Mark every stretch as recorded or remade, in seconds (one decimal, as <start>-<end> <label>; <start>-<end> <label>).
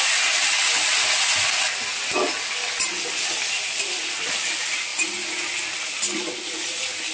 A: 0.0-7.1 recorded